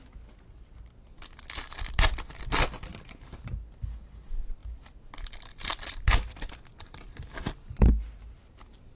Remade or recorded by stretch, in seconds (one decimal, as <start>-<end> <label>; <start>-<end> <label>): 0.0-2.9 recorded; 2.9-3.5 remade; 3.5-6.7 recorded; 6.7-8.2 remade; 8.2-9.0 recorded